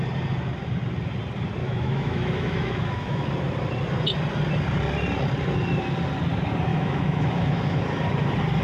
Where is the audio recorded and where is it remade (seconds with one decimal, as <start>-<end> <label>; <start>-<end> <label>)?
0.0-1.6 recorded; 1.6-3.3 remade; 3.3-6.7 recorded; 6.7-7.8 remade; 7.8-8.6 recorded